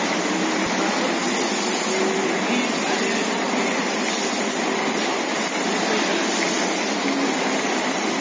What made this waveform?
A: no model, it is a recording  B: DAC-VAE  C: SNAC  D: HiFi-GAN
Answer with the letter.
A